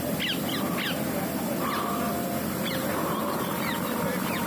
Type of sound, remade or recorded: recorded